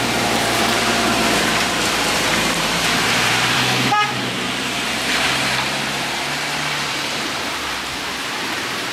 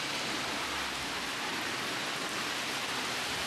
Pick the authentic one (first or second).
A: second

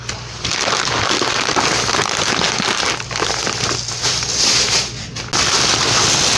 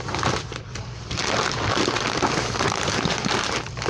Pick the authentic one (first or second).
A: first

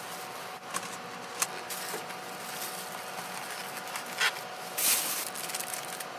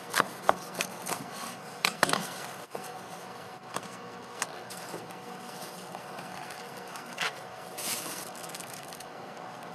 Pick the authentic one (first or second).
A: first